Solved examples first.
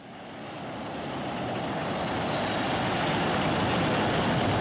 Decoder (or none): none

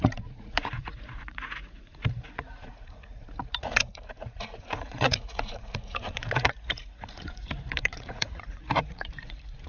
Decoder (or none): vocoder, Vocos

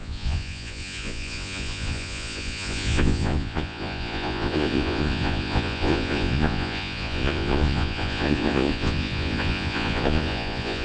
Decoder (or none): vocoder, Vocos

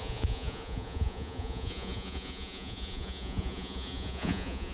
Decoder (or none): vocoder, Vocos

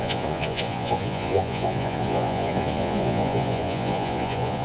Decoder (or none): vocoder, Vocos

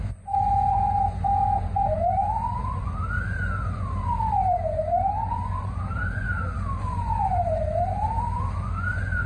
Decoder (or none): vocoder, Vocos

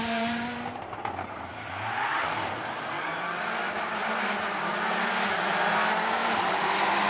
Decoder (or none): none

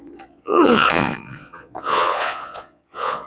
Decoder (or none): vocoder, Vocos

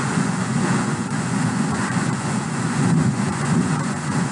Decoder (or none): vocoder, Vocos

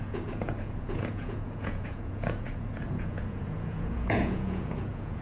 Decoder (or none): vocoder, Vocos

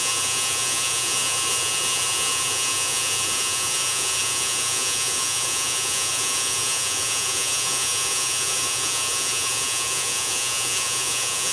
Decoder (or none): vocoder, Vocos